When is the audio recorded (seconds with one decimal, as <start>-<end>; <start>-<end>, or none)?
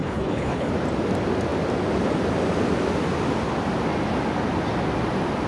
0.7-5.5